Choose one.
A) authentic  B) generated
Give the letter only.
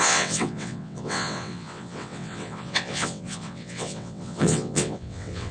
B